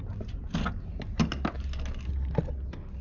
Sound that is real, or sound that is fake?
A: real